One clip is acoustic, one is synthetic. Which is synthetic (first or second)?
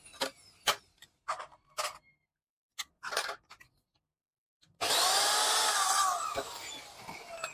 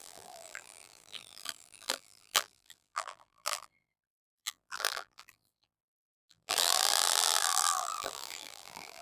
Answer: second